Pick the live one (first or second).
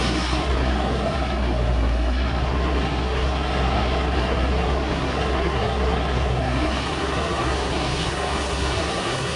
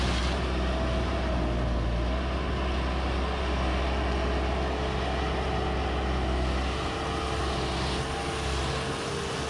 second